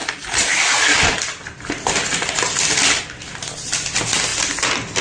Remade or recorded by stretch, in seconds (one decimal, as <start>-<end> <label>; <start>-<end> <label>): 0.0-3.0 remade; 3.0-4.3 recorded; 4.3-5.0 remade